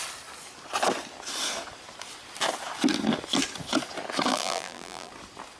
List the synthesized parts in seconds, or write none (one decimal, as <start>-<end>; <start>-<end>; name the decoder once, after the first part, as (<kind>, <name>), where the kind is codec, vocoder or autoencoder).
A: 4.3-5.1 (vocoder, BigVGAN v2)